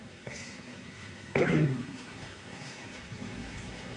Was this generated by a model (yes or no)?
yes